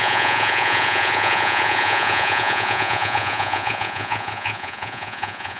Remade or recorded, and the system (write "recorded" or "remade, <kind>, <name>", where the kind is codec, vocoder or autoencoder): remade, vocoder, Vocos